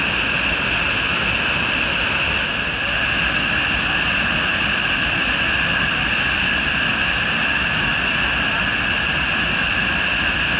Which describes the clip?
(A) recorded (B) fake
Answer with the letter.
A